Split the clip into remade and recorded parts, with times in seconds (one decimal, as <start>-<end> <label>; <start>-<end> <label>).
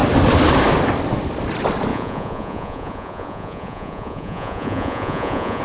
0.0-1.9 recorded; 1.9-5.6 remade